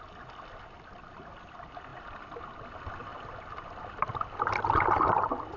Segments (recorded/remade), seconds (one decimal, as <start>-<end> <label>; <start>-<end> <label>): 0.0-3.1 recorded; 3.1-5.6 remade